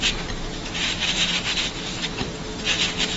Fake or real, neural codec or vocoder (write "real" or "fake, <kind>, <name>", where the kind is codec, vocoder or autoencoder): real